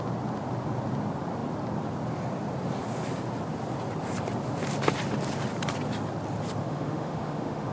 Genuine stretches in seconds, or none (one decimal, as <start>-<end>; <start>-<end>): 0.0-6.6

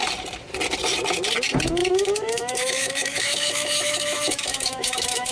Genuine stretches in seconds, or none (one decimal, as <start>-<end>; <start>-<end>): 0.0-1.8

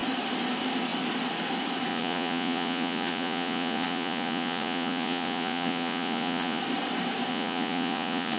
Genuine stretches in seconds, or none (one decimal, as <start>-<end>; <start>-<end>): 0.0-1.9; 6.6-7.3

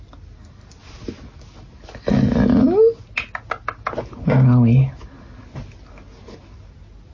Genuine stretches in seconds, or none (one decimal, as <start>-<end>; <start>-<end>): 0.0-7.1

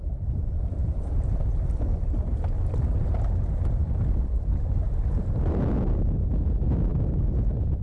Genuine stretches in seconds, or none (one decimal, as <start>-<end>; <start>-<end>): 0.0-0.8; 1.3-3.8; 4.8-7.8